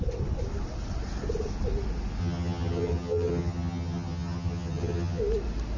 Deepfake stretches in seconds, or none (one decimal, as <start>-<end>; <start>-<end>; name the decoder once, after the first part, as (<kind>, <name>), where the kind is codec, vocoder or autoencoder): 2.2-5.2 (vocoder, HiFi-GAN)